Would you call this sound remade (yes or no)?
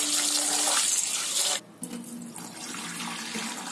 no